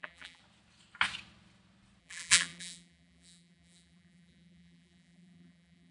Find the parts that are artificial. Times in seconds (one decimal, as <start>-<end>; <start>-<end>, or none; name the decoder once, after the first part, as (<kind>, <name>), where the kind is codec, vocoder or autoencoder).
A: 0.0-0.4 (vocoder, BigVGAN v2); 2.0-5.9